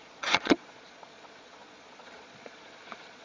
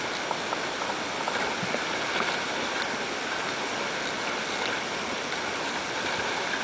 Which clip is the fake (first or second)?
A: first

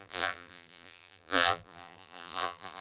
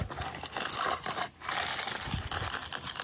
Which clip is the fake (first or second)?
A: first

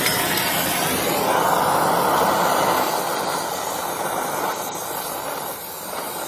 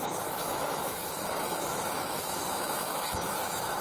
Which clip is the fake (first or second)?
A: second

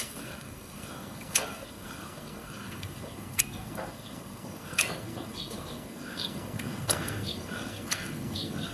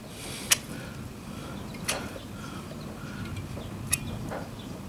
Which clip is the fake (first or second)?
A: first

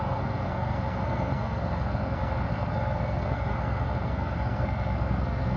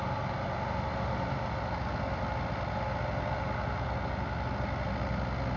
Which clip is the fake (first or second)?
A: first